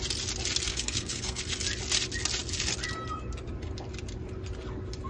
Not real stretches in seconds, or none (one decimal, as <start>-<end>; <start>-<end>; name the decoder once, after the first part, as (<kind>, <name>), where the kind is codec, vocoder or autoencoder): 0.7-1.4 (codec, SNAC)